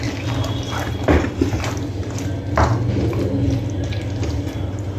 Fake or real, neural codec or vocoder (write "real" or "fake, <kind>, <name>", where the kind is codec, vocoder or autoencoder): real